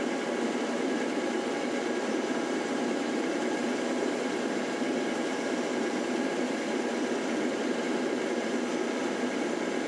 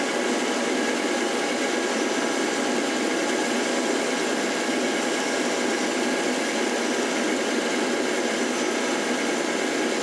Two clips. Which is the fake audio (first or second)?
first